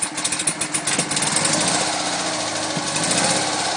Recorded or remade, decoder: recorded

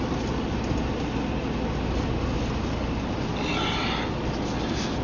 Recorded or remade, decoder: recorded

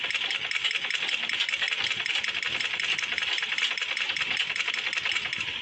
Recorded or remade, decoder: recorded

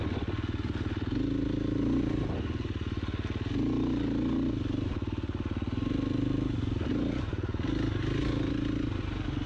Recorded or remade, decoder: recorded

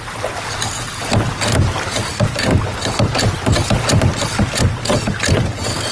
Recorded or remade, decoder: recorded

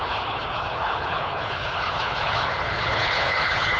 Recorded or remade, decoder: remade, codec, HILCodec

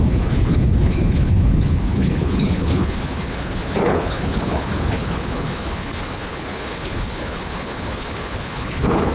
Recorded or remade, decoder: remade, codec, HILCodec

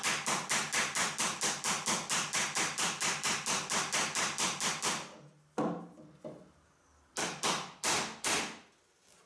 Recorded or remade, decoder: recorded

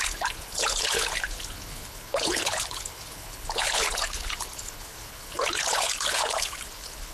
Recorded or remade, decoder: remade, codec, HILCodec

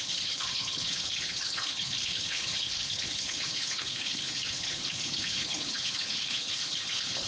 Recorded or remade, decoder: remade, codec, HILCodec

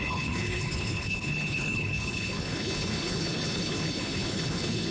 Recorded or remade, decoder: remade, codec, HILCodec